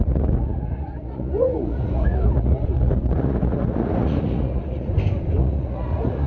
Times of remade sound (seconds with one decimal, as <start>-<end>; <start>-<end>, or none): 0.0-4.9; 5.4-6.3